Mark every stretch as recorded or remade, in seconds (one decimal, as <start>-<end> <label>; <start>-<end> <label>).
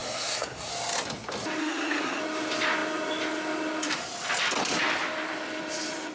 0.0-0.7 remade; 0.7-1.6 recorded; 1.6-2.2 remade; 2.2-6.1 recorded